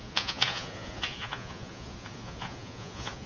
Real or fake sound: fake